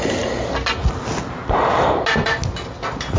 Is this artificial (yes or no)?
no